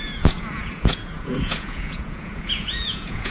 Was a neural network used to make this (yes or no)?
yes